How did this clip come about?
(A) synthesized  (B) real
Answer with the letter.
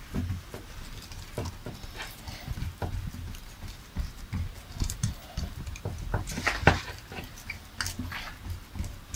A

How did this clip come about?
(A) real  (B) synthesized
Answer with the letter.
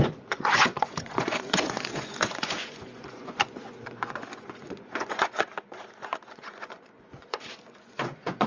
B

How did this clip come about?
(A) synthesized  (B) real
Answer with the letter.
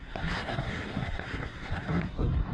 A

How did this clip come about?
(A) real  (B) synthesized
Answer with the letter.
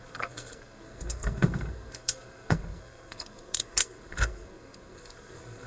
B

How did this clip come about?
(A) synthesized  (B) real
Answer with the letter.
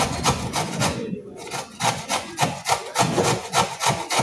A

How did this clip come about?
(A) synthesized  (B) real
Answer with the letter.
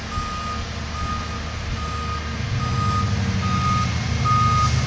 B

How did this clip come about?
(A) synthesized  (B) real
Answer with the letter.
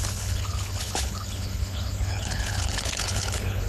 A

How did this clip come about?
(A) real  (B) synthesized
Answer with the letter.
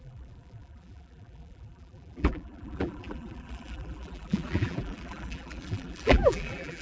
B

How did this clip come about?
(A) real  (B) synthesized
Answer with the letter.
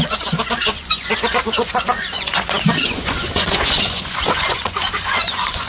B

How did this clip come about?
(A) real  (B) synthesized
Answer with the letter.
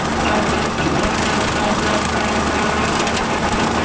A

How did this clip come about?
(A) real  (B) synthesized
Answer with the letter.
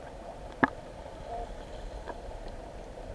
B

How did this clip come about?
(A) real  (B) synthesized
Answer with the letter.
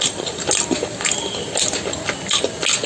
A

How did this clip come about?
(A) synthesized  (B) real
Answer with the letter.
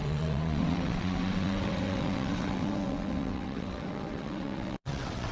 A